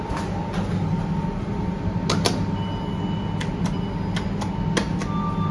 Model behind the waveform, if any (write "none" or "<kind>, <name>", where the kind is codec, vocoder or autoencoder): none